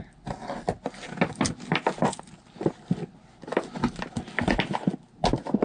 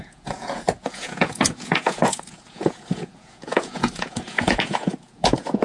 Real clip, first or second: first